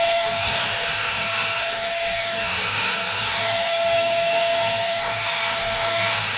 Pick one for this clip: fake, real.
fake